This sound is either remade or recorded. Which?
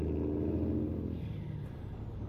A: recorded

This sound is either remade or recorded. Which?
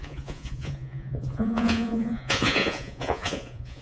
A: remade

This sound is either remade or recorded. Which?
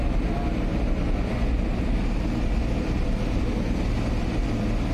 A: recorded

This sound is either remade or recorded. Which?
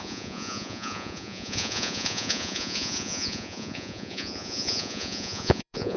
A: remade